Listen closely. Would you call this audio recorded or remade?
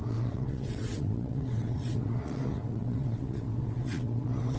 remade